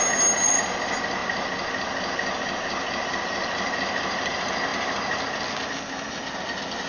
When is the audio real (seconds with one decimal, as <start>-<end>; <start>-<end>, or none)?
0.0-6.9